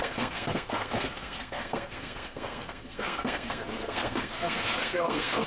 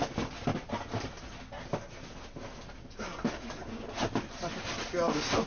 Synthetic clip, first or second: first